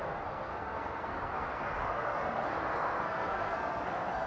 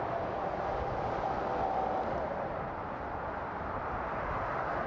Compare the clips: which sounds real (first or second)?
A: second